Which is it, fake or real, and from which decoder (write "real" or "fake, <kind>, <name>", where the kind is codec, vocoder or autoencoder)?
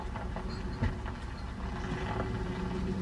real